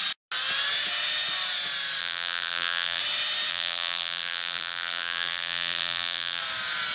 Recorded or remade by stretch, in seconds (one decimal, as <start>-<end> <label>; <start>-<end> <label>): 0.0-2.0 recorded; 2.0-3.0 remade; 3.0-3.5 recorded; 3.5-6.4 remade; 6.4-6.9 recorded